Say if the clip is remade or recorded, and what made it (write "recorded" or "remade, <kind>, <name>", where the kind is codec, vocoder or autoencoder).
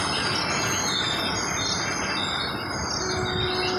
recorded